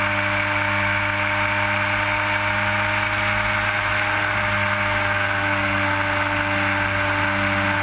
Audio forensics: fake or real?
real